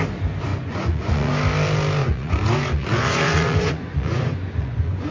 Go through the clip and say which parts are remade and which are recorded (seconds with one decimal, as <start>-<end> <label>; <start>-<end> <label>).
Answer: 0.0-0.5 recorded; 0.5-1.3 remade; 1.3-2.0 recorded; 2.0-5.1 remade